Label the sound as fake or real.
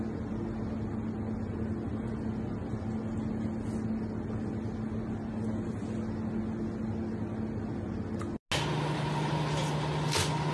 real